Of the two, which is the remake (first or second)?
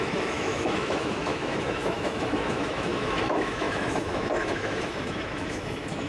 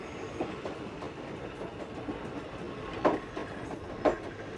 first